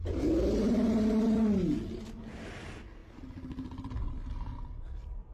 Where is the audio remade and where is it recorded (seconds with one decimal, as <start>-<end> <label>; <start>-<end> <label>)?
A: 0.0-5.3 recorded